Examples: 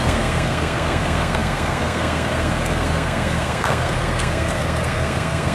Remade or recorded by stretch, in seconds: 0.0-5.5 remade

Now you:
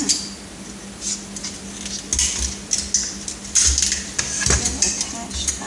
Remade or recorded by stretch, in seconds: 0.0-5.7 recorded